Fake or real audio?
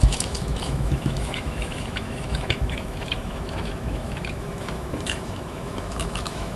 fake